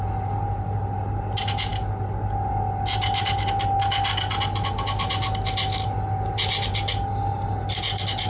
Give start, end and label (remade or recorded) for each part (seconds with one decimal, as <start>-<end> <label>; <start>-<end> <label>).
0.0-8.3 recorded